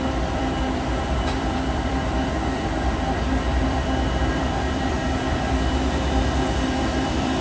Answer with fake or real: fake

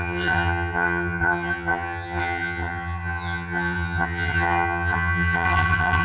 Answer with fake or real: fake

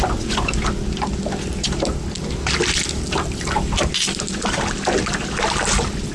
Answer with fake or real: real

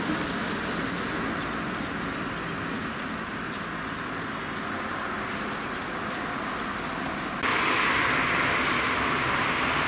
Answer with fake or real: real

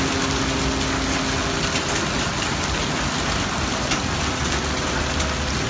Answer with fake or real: real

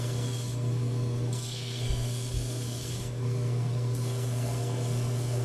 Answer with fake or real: fake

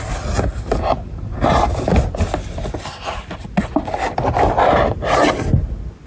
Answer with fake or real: real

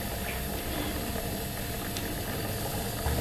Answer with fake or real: real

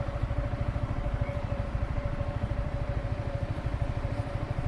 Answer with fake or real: fake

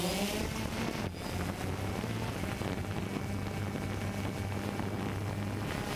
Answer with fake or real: real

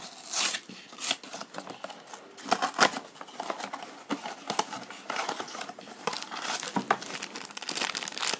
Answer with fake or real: real